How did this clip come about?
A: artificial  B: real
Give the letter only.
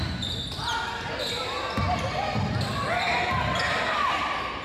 B